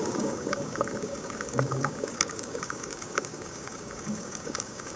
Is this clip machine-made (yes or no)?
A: yes